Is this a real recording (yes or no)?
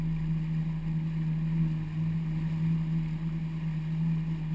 yes